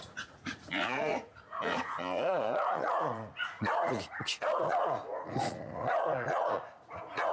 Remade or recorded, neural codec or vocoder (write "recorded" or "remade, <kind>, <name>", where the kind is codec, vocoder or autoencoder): remade, vocoder, Vocos